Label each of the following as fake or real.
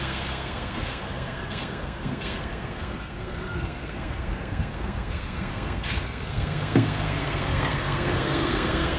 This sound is fake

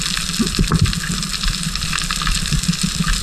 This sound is real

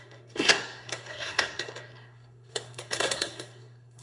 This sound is fake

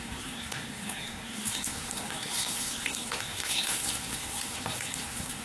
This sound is fake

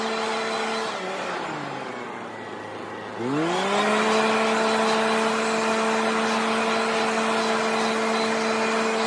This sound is real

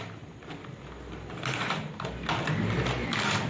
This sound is real